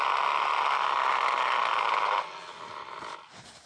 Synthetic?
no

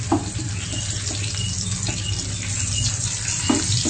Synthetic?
no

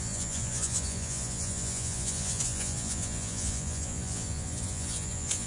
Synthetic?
yes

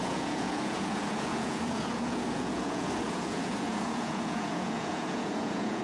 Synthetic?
yes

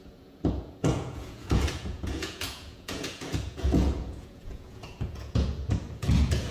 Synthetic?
yes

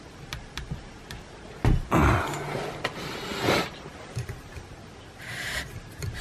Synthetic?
no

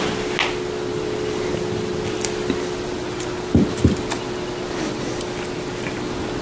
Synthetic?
no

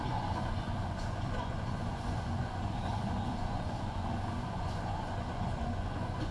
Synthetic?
yes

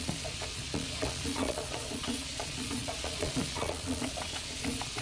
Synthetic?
yes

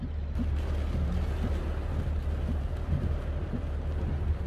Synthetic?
no